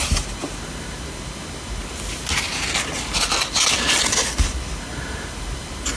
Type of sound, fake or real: real